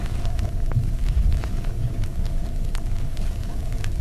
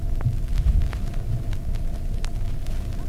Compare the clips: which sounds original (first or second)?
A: second